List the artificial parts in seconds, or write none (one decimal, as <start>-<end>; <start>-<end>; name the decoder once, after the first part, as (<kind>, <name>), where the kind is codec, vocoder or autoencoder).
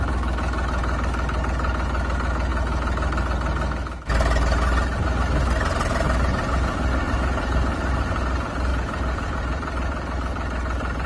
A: 8.7-11.1 (vocoder, BigVGAN v2)